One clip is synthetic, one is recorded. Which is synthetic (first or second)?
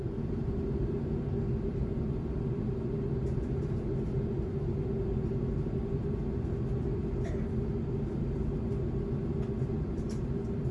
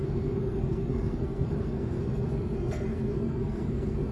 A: second